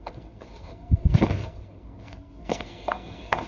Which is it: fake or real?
fake